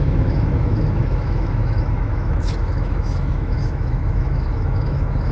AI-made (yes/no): yes